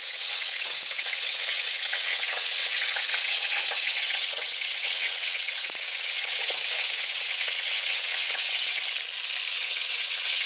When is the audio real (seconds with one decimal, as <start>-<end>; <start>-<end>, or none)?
8.8-9.5